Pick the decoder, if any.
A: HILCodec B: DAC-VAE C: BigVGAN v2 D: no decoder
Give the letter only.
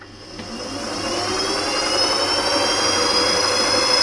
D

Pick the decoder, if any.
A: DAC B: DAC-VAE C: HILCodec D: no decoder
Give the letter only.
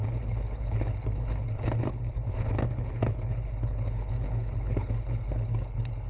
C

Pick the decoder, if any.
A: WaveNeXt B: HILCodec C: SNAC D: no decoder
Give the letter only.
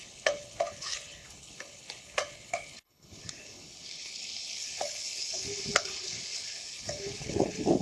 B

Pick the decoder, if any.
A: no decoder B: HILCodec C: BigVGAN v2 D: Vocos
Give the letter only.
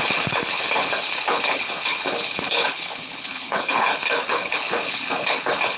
B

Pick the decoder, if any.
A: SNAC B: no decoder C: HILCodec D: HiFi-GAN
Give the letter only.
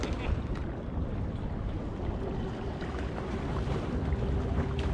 B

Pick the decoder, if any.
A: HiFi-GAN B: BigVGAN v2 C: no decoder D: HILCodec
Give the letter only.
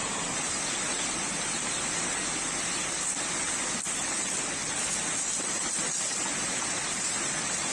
C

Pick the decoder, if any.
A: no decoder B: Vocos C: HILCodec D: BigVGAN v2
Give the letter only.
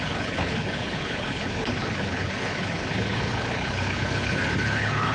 C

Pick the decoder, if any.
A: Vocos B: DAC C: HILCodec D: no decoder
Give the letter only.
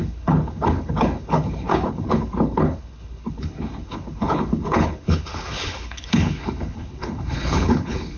C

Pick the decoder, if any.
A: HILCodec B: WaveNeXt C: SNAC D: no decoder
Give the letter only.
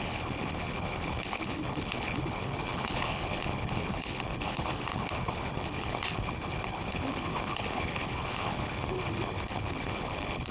A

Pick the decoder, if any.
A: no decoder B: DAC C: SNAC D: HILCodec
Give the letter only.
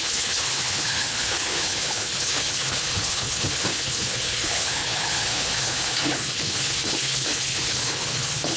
D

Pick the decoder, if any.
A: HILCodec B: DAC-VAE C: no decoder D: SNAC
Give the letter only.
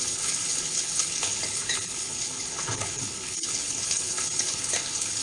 A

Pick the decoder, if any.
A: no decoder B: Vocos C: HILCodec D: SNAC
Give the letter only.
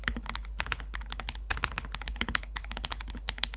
C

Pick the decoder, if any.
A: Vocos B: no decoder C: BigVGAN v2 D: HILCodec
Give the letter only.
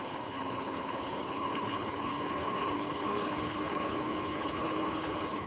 D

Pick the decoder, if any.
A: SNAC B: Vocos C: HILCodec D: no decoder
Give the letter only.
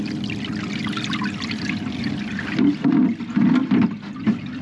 D